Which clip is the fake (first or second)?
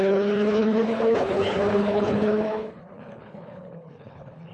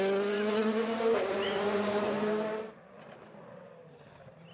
first